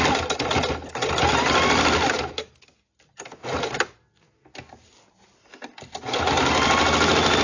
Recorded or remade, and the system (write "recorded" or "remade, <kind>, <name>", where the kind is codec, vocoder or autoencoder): recorded